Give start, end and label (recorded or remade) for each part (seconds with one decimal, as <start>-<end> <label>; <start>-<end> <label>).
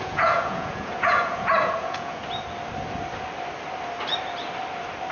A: 0.0-2.2 remade; 2.2-5.1 recorded